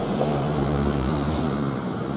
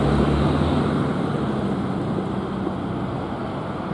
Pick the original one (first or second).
second